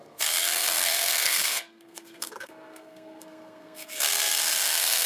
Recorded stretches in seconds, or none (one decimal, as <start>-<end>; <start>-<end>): none